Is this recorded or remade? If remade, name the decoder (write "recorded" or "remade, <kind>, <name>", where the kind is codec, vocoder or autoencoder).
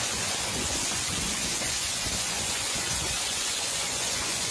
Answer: remade, vocoder, Vocos